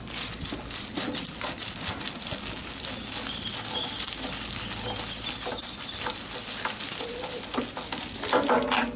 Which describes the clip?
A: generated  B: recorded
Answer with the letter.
B